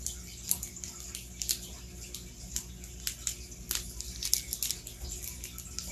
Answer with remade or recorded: recorded